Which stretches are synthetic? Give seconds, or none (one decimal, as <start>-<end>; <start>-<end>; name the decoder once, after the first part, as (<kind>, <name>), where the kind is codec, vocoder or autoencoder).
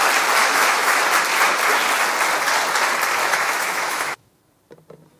0.4-1.0 (autoencoder, DAC-VAE); 3.2-4.4